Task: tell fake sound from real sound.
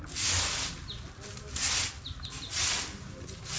real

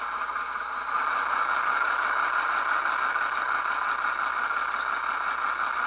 real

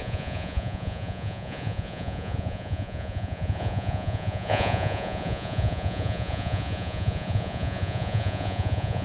fake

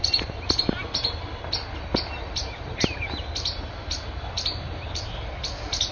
real